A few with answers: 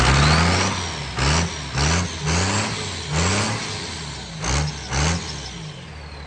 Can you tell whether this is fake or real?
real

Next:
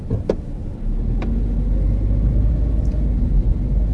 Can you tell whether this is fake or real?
real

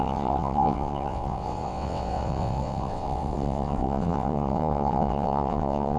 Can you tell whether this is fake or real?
fake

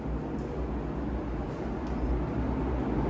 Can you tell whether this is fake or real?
real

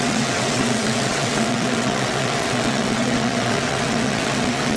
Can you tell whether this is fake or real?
fake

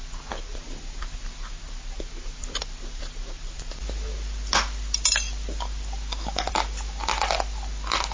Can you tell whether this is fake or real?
real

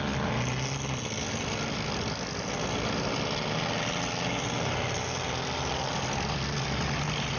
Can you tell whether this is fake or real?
real